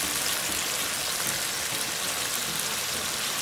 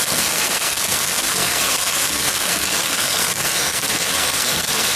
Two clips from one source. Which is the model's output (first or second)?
second